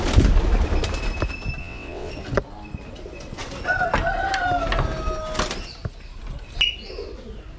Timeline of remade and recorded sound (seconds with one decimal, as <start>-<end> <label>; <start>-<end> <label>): 0.0-1.6 recorded; 1.6-2.1 remade; 2.1-7.6 recorded

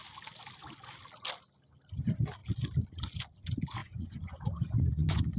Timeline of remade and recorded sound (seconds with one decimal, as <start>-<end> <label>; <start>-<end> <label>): 0.0-3.8 recorded; 3.8-5.4 remade

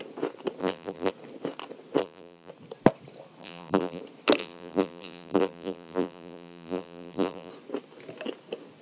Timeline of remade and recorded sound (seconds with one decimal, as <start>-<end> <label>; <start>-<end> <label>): 0.0-0.6 recorded; 0.6-1.1 remade; 1.1-2.0 recorded; 2.0-2.5 remade; 2.5-3.4 recorded; 3.4-4.0 remade; 4.0-4.4 recorded; 4.4-7.5 remade; 7.5-8.8 recorded

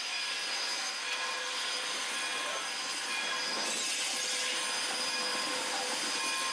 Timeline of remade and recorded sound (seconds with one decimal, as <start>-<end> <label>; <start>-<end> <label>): 0.0-5.3 recorded; 5.3-5.9 remade; 5.9-6.5 recorded

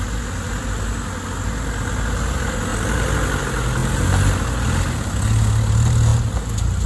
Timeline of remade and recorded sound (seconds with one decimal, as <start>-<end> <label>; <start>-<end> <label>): 0.0-6.9 recorded

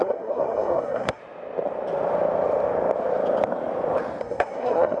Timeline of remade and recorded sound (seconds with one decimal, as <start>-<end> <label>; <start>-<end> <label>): 0.0-1.2 remade; 1.2-4.2 recorded; 4.2-5.0 remade

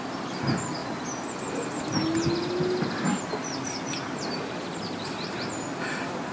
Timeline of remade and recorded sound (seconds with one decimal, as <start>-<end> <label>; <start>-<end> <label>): 0.0-0.8 remade; 0.8-4.6 recorded; 4.6-6.3 remade

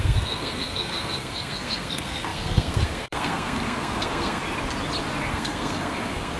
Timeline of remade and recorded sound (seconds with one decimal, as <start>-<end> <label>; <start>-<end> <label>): 0.0-4.4 remade; 4.4-5.3 recorded; 5.3-6.4 remade